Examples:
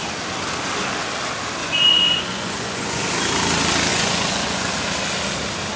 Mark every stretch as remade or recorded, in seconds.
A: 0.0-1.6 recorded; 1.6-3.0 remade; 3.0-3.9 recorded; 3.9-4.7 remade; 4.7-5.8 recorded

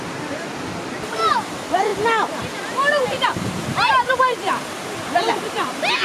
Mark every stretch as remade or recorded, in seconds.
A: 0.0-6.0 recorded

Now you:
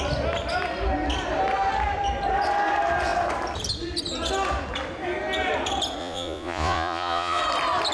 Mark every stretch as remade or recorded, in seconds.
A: 0.0-6.0 recorded; 6.0-7.4 remade; 7.4-7.9 recorded